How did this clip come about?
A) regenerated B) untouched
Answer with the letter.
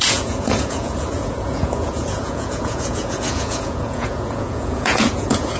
A